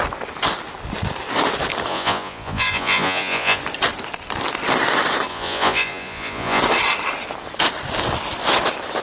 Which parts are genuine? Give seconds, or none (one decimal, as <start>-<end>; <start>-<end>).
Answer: 0.0-1.9; 3.6-5.3; 6.6-9.0